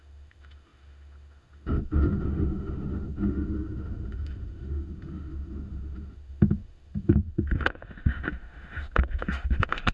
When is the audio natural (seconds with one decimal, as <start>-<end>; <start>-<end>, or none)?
none